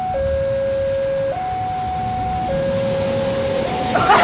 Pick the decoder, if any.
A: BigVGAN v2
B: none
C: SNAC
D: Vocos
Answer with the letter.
B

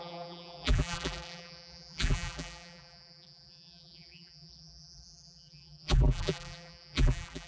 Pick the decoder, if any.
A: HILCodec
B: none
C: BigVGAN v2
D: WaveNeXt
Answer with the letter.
C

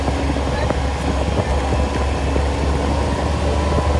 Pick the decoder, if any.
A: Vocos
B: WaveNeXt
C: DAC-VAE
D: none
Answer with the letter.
D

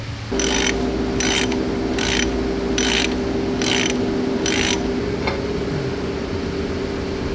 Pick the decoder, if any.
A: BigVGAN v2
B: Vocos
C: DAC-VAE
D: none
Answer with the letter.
D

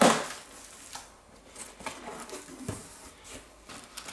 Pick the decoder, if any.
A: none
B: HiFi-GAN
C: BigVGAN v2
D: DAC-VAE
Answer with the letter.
A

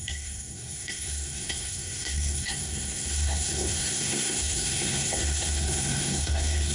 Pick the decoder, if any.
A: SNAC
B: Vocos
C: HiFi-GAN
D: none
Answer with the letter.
A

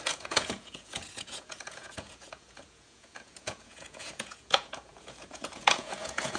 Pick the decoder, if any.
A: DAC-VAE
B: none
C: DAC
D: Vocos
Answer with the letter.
D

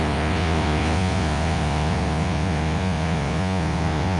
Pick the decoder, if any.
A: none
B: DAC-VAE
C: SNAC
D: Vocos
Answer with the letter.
D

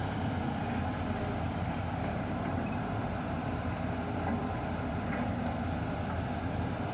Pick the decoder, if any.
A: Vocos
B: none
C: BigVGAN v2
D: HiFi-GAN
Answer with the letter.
C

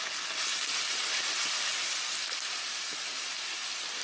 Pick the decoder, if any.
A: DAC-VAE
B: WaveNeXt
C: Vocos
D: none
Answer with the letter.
D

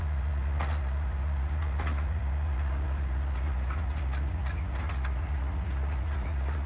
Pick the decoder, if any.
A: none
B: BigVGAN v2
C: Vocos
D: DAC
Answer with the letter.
C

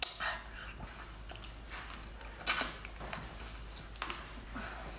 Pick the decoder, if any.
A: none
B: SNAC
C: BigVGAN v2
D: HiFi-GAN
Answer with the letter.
A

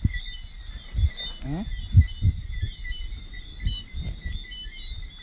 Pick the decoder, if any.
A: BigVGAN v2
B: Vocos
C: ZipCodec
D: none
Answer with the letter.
D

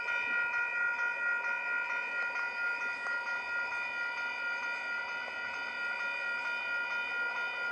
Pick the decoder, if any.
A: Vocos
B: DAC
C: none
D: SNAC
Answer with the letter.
C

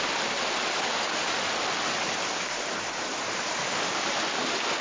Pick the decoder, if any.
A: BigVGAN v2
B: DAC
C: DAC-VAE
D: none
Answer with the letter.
D